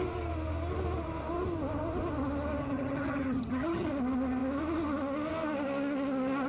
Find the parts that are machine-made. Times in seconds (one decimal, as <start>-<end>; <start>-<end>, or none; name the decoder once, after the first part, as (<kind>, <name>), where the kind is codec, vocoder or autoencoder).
2.6-3.9 (vocoder, HiFi-GAN)